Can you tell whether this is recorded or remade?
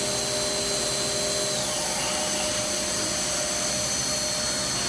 recorded